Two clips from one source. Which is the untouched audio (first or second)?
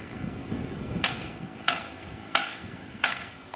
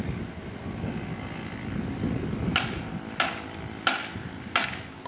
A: second